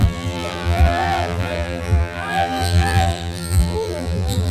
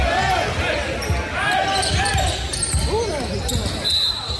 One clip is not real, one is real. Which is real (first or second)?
second